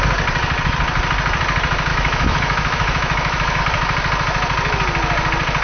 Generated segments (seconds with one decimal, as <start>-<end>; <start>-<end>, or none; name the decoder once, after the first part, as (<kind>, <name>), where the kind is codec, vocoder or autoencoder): 1.9-3.6 (autoencoder, DAC-VAE)